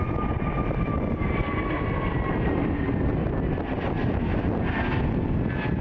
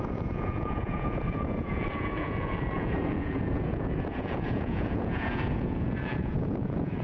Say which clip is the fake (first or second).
second